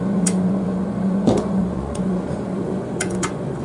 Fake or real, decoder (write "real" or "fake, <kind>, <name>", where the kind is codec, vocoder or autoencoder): fake, vocoder, Vocos